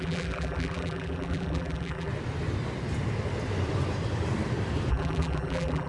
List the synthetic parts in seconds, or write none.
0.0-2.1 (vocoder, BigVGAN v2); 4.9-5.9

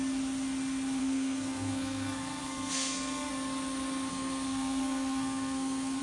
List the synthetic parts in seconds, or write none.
1.0-3.3 (codec, SNAC); 4.1-6.0

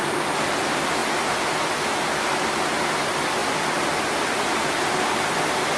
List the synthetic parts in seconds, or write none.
none

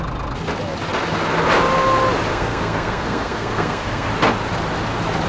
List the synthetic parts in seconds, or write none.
2.3-4.1 (codec, SNAC)